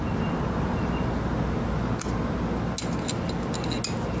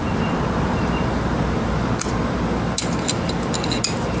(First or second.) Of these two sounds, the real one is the first